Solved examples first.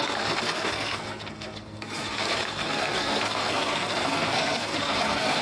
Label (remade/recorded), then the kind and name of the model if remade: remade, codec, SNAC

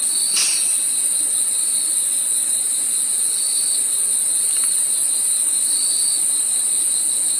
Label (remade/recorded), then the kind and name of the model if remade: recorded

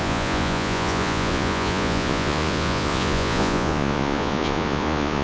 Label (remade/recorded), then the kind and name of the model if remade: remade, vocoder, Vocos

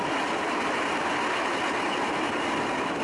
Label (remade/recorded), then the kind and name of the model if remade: recorded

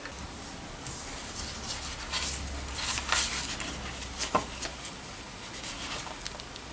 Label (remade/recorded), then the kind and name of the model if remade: recorded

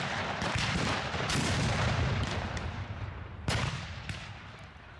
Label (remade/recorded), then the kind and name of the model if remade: remade, vocoder, BigVGAN v2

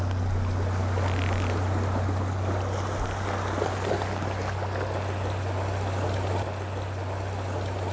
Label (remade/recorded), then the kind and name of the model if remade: recorded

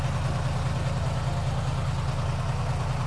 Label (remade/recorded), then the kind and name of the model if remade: recorded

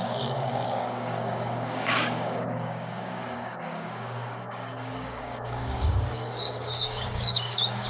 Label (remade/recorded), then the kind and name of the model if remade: remade, codec, DAC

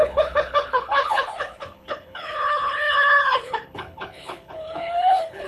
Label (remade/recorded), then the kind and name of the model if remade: remade, codec, HILCodec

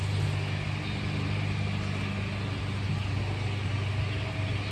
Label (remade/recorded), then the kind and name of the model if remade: recorded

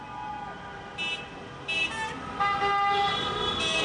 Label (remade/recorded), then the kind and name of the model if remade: recorded